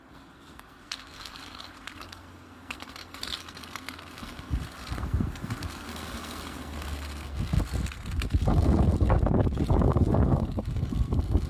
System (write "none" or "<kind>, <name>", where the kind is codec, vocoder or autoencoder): codec, SNAC